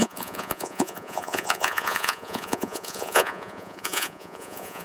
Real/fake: fake